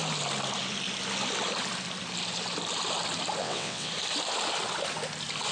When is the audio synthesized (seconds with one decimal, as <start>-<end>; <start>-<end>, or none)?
3.4-3.9